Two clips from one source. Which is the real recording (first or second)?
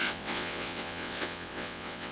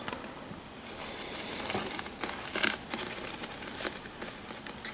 second